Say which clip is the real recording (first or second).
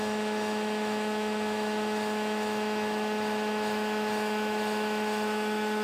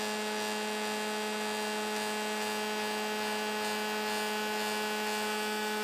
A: second